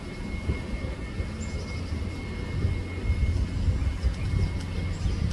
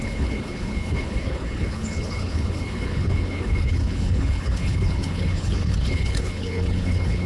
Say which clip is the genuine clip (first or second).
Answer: first